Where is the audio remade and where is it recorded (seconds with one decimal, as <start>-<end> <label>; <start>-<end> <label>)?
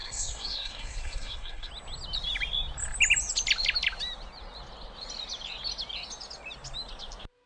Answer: 0.0-1.7 remade; 1.7-7.5 recorded